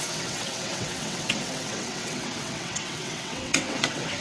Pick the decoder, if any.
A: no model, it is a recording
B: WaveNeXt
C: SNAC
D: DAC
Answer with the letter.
B